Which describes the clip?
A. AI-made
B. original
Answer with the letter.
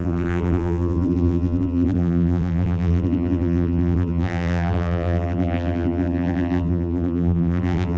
A